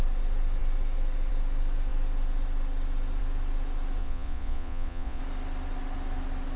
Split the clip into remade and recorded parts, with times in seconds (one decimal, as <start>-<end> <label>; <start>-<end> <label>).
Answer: 0.0-4.0 recorded; 4.0-5.2 remade; 5.2-6.6 recorded